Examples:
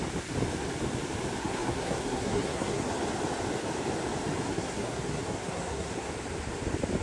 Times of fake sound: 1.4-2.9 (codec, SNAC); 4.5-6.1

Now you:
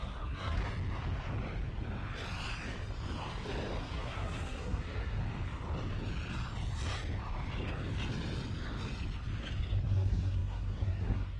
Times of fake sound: 0.0-0.6 (codec, SNAC); 3.8-5.2; 9.8-11.4

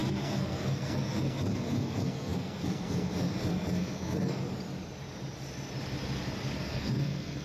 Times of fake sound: 0.0-4.4 (codec, SNAC); 6.6-7.4